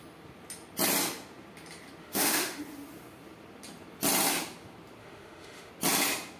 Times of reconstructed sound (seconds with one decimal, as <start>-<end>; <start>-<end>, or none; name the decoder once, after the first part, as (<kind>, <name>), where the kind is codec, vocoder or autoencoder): 2.0-2.6 (autoencoder, DAC-VAE); 5.0-5.7